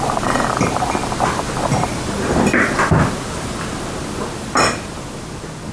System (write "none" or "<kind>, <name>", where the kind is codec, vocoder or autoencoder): none